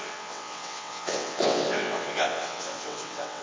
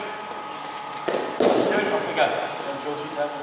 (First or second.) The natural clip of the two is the second